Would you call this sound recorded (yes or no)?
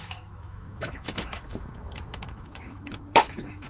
no